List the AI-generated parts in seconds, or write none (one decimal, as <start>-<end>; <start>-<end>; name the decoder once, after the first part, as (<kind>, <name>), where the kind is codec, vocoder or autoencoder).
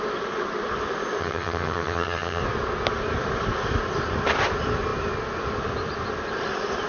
1.2-2.4 (vocoder, HiFi-GAN)